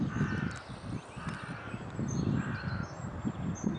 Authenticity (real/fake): real